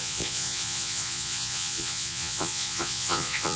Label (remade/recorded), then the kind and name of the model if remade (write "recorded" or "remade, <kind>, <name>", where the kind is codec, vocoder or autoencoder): remade, vocoder, Vocos